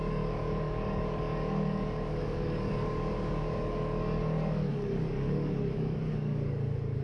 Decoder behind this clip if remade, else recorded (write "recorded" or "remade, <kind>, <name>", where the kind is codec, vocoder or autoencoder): remade, codec, DAC